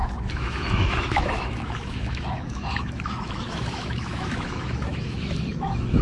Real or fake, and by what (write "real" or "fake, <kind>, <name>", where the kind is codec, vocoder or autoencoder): fake, autoencoder, DAC-VAE